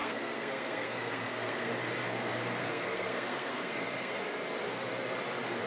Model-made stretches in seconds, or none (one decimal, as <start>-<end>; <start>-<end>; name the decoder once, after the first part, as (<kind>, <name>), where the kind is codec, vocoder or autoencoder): 0.0-1.7 (codec, SNAC); 2.6-4.2